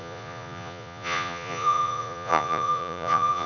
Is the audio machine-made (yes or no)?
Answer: yes